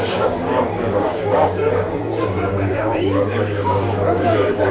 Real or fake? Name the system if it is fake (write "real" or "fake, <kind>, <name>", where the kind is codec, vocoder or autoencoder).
fake, codec, DAC